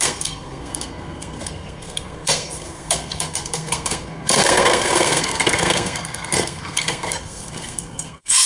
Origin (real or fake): fake